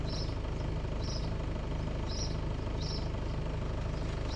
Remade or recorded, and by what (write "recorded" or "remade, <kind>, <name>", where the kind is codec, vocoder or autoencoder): recorded